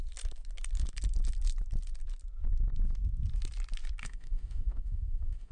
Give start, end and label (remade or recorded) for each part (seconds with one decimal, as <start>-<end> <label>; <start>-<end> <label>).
0.0-4.0 recorded; 4.0-5.5 remade